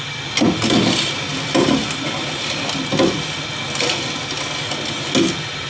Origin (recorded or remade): recorded